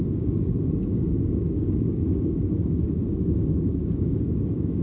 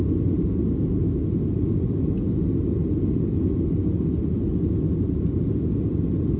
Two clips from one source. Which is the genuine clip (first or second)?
second